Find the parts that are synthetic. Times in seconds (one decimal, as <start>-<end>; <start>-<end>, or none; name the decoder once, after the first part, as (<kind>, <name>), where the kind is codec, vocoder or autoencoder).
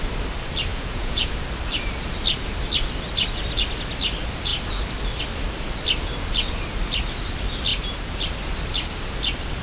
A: 0.7-1.3 (vocoder, Vocos)